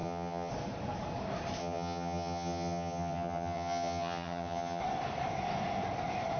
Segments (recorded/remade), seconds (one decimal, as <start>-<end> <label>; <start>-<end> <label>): 0.0-0.5 remade; 0.5-1.6 recorded; 1.6-4.8 remade; 4.8-6.4 recorded